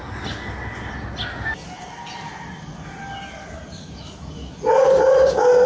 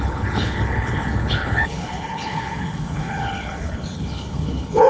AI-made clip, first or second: second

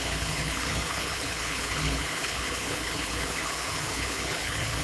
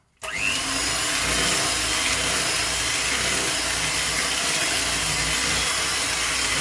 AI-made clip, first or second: first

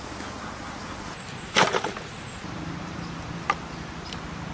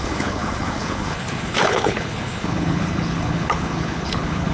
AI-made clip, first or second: second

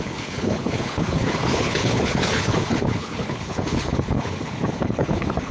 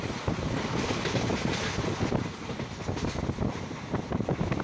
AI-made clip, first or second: first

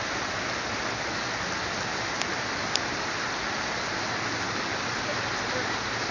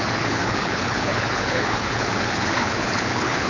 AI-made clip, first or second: second